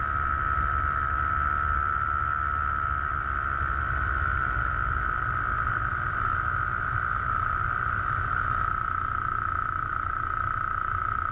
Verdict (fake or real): real